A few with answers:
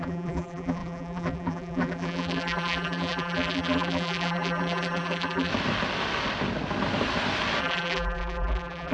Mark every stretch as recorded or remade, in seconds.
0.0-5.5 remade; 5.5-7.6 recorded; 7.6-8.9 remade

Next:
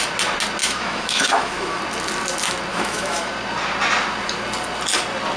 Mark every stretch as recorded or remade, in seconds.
0.0-0.6 recorded; 0.6-1.8 remade; 1.8-2.7 recorded; 2.7-3.3 remade; 3.3-5.4 recorded

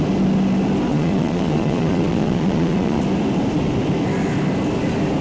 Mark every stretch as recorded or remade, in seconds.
0.0-0.9 recorded; 0.9-3.0 remade; 3.0-5.2 recorded

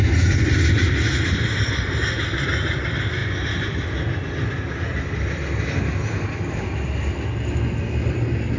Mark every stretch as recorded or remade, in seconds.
0.0-8.6 recorded

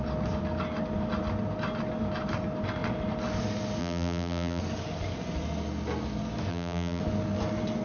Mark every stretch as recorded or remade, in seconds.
0.0-3.8 recorded; 3.8-4.6 remade; 4.6-6.5 recorded; 6.5-7.0 remade; 7.0-7.8 recorded